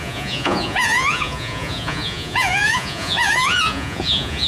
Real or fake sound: fake